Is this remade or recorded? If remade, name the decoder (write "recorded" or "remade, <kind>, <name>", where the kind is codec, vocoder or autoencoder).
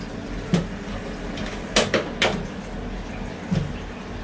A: recorded